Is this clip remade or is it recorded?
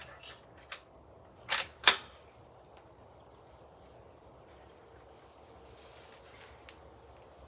recorded